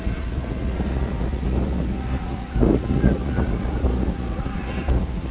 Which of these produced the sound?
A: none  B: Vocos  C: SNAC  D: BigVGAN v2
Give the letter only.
B